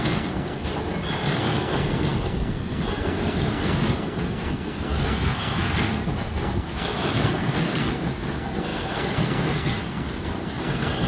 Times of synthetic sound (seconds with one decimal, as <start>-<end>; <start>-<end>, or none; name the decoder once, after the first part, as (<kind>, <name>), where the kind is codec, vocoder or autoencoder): 0.0-0.7 (codec, SNAC); 1.3-11.1